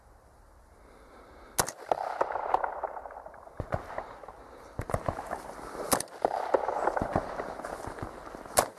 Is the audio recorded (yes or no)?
yes